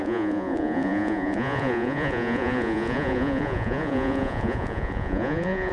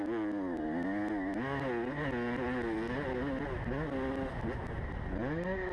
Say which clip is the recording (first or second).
second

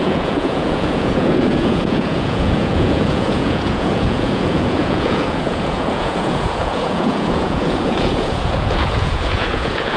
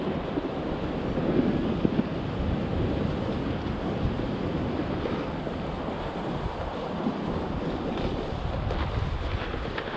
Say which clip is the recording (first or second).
second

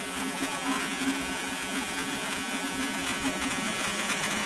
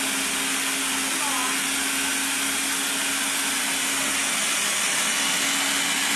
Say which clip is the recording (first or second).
second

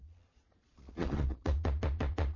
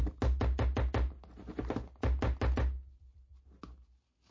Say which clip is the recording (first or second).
second